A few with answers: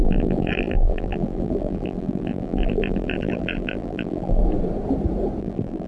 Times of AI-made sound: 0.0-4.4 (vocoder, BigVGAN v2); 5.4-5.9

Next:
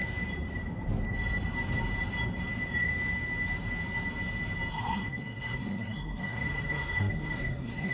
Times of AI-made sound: 4.7-7.9 (codec, SNAC)

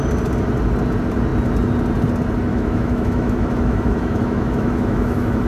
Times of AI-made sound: 2.5-5.5 (autoencoder, DAC-VAE)

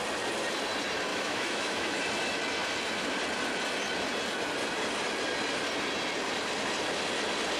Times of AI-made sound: 1.1-2.0 (autoencoder, DAC-VAE)

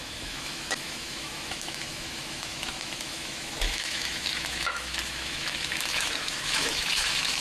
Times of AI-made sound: 0.0-7.4 (autoencoder, DAC-VAE)

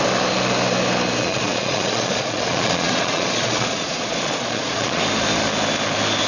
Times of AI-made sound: 1.2-5.0 (vocoder, Vocos)